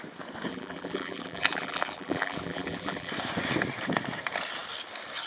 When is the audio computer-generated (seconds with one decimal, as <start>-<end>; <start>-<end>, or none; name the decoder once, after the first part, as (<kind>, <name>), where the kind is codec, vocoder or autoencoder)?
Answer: 0.5-3.1 (vocoder, BigVGAN v2)